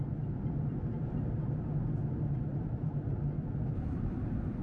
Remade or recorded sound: recorded